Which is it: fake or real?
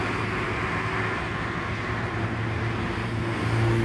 real